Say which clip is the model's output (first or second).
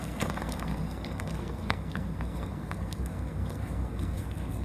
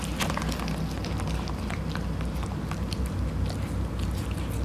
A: first